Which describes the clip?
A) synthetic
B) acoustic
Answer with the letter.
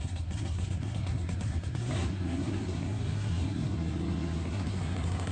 A